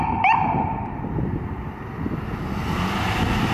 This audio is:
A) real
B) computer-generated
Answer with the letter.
A